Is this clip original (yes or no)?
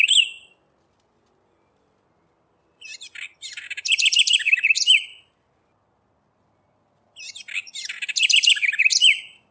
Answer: yes